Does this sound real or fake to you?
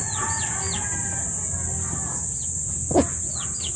real